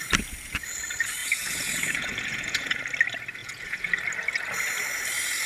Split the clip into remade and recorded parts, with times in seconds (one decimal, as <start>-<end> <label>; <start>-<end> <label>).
0.0-1.2 recorded; 1.2-2.8 remade; 2.8-3.4 recorded; 3.4-3.9 remade; 3.9-5.5 recorded